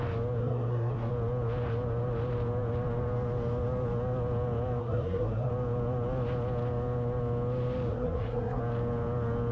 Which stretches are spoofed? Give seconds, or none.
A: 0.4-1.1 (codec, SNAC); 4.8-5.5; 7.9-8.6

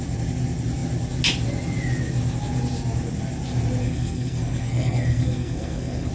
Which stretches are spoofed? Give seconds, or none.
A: 3.8-6.1 (codec, SNAC)